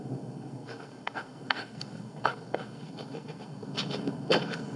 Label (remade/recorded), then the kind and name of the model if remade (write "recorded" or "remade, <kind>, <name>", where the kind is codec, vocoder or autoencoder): remade, codec, SNAC